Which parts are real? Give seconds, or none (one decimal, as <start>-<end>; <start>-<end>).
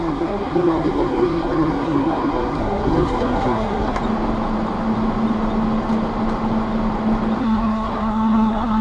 4.0-7.4